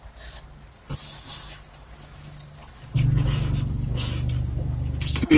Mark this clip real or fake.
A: real